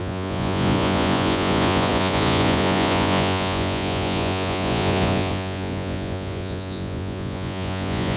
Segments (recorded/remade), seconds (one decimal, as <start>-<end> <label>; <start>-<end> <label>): 0.0-8.2 remade